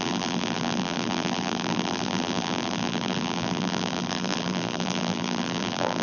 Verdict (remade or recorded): remade